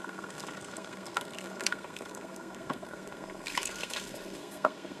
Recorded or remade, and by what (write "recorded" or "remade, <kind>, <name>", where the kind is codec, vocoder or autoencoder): remade, codec, SNAC